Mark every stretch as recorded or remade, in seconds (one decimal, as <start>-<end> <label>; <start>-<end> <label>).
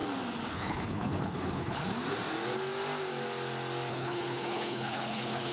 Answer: 0.0-0.5 recorded; 0.5-1.9 remade; 1.9-3.9 recorded; 3.9-5.5 remade